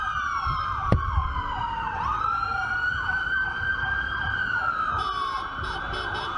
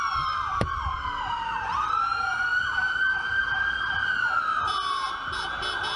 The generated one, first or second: first